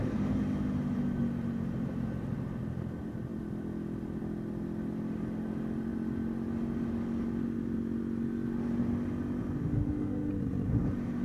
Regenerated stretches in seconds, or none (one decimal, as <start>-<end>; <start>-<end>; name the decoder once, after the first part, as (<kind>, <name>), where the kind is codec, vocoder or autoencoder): 9.6-10.3 (autoencoder, DAC-VAE)